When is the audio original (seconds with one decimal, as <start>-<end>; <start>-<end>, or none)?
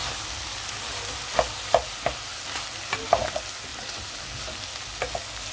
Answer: 0.0-5.5